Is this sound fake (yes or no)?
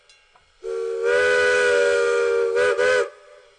no